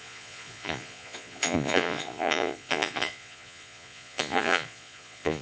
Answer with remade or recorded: remade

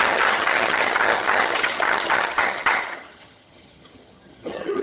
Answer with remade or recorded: remade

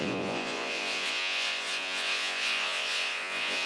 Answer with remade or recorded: remade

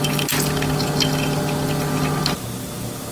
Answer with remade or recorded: recorded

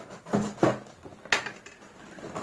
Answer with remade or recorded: recorded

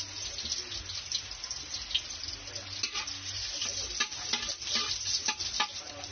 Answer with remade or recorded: recorded